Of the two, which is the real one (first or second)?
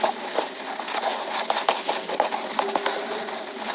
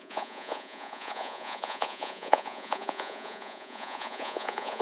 first